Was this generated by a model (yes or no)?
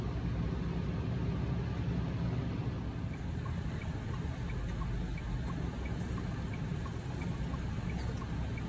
no